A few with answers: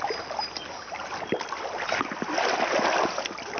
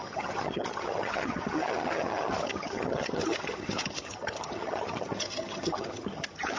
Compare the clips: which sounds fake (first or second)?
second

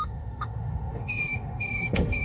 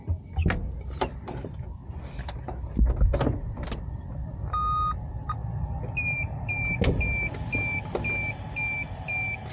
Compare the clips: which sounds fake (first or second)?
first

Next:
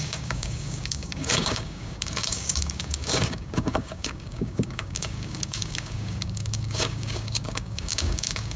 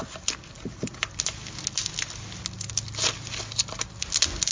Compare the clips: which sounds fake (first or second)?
first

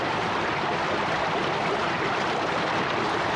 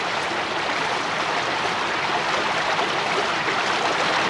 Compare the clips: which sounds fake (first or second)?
first